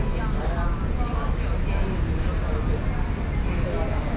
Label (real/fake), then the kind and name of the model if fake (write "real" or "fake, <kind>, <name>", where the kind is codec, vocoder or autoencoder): real